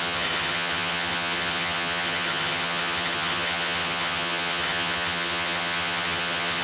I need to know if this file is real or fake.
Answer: fake